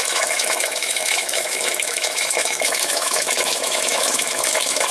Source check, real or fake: fake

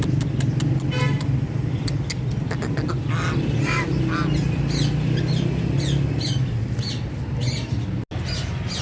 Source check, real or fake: real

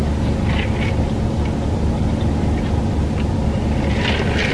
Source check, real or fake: real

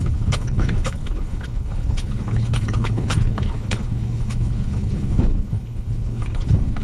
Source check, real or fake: fake